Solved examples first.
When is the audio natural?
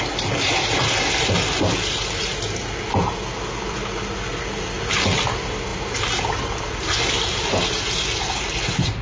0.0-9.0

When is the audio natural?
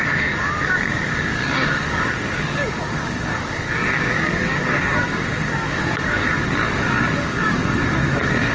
none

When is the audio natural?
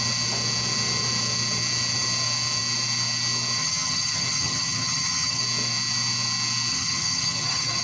0.0-3.6; 5.4-6.7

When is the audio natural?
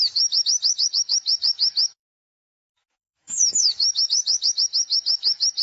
none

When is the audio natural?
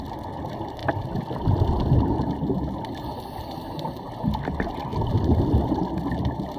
0.0-6.6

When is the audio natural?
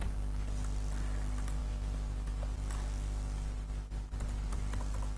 0.0-5.2